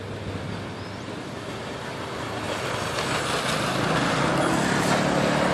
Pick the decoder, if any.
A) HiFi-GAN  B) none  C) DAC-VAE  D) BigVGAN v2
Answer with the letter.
B